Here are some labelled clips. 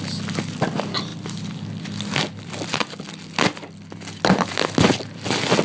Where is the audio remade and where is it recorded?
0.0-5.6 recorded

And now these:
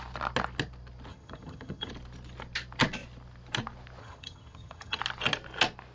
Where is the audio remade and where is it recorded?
0.0-1.1 recorded; 1.1-1.9 remade; 1.9-4.0 recorded; 4.0-5.0 remade; 5.0-5.9 recorded

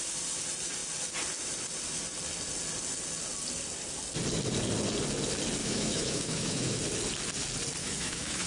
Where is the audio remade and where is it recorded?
0.0-5.6 recorded; 5.6-6.8 remade; 6.8-7.8 recorded; 7.8-8.5 remade

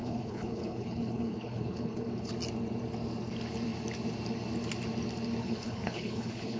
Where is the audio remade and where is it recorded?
0.0-2.3 remade; 2.3-5.4 recorded; 5.4-6.6 remade